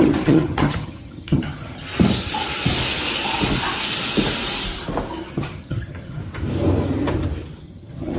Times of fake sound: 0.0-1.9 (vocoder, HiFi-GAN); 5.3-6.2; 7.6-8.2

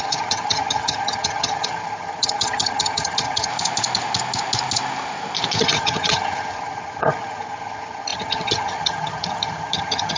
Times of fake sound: 0.0-3.5 (vocoder, HiFi-GAN); 5.6-10.2

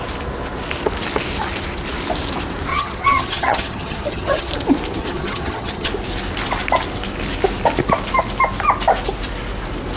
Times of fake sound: 2.7-4.5 (vocoder, HiFi-GAN); 5.0-5.9

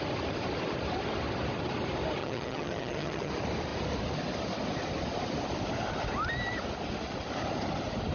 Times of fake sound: 2.2-3.3 (vocoder, HiFi-GAN)

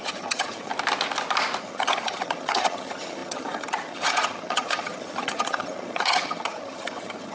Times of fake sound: 0.0-0.7 (vocoder, HiFi-GAN); 1.6-7.3

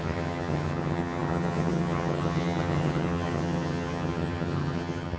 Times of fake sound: 0.0-5.2 (vocoder, HiFi-GAN)

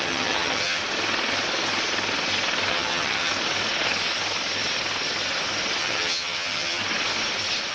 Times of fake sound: 0.0-0.8 (vocoder, HiFi-GAN); 2.7-3.3; 5.8-6.8